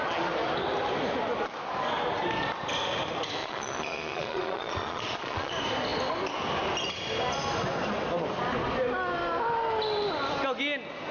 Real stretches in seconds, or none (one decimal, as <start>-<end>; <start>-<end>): 0.0-3.4; 5.5-11.1